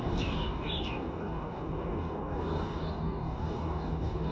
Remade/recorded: remade